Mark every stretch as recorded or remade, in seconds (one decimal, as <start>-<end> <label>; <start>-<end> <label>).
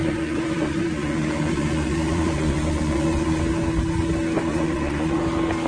0.0-3.4 remade; 3.4-4.5 recorded; 4.5-5.2 remade; 5.2-5.7 recorded